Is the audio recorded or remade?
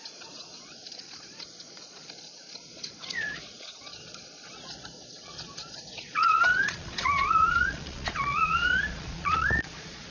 remade